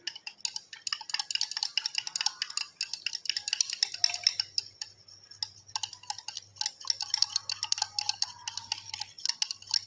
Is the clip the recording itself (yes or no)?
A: yes